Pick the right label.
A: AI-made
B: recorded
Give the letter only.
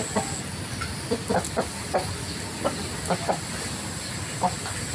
B